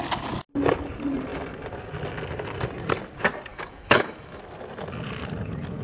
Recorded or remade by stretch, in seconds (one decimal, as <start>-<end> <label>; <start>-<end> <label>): 0.0-3.5 recorded; 3.5-4.4 remade; 4.4-5.8 recorded